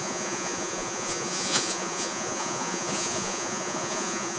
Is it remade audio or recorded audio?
remade